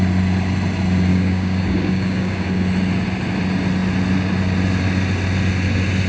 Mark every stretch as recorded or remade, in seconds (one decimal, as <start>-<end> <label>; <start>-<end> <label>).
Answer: 0.0-1.1 recorded; 1.1-2.5 remade; 2.5-6.1 recorded